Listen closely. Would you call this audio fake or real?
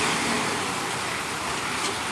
real